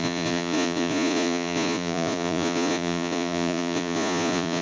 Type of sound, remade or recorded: remade